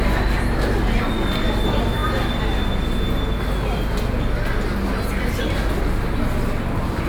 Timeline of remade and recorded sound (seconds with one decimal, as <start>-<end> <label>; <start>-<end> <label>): 0.0-7.1 recorded

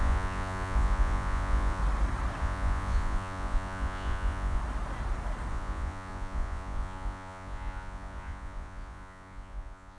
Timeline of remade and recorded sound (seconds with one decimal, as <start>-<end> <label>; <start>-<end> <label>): 0.0-1.8 remade; 1.8-2.4 recorded; 2.4-4.6 remade; 4.6-5.5 recorded; 5.5-10.0 remade

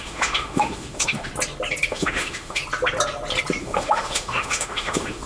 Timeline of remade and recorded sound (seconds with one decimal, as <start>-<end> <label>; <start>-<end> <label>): 0.0-1.3 remade; 1.3-1.9 recorded; 1.9-2.6 remade; 2.6-3.6 recorded; 3.6-5.3 remade